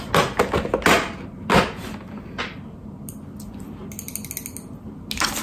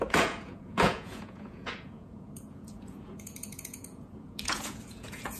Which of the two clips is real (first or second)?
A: first